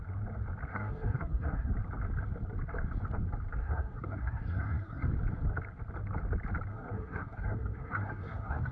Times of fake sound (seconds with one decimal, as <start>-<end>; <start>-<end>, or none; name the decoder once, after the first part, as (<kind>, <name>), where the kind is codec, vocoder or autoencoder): 0.7-1.7 (codec, SNAC); 3.6-5.1; 6.7-8.7